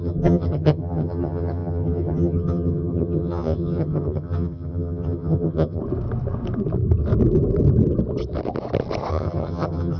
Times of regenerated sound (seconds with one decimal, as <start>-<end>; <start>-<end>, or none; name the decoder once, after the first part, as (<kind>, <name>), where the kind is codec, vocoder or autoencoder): 0.0-5.8 (vocoder, HiFi-GAN); 9.1-10.0